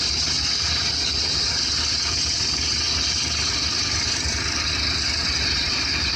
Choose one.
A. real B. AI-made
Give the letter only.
A